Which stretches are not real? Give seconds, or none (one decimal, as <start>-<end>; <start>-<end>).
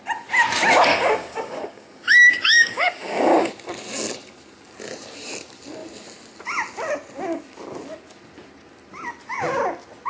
0.9-3.5